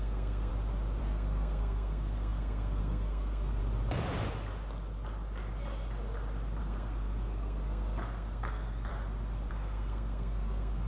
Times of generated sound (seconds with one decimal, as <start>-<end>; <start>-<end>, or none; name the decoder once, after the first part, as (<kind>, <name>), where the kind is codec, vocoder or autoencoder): 0.0-0.5 (codec, SNAC); 1.0-3.6; 6.6-8.9; 9.5-10.9